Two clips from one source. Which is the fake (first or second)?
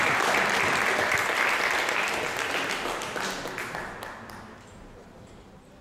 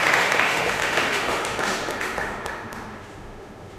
second